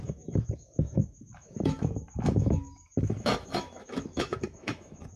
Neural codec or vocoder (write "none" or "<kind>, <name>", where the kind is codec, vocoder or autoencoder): autoencoder, DAC-VAE